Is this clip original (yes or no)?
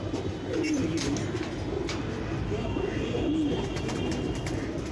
yes